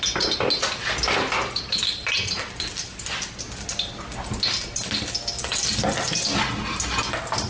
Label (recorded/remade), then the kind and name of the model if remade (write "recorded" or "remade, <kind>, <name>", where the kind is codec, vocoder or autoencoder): recorded